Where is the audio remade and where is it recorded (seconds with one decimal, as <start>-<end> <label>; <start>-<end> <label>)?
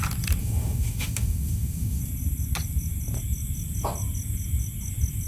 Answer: 0.0-0.4 recorded; 0.4-2.0 remade; 2.0-5.3 recorded